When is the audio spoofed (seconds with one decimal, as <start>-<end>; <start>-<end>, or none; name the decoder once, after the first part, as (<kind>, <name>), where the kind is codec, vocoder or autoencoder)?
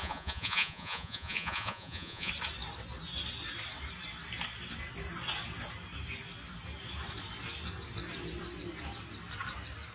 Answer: 0.0-2.3 (vocoder, Vocos)